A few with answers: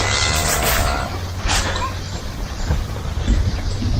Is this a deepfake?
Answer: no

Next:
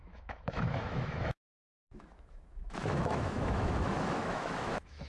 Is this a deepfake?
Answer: yes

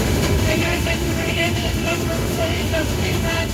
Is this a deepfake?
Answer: yes